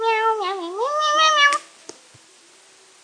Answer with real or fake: real